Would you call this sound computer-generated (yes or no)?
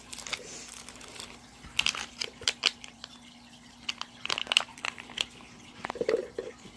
yes